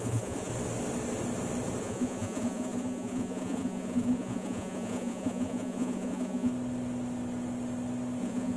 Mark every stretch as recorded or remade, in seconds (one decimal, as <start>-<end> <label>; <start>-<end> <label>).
0.0-0.5 remade; 0.5-1.8 recorded; 1.8-6.5 remade; 6.5-8.2 recorded; 8.2-8.6 remade